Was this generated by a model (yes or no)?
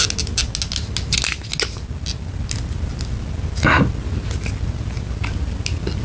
no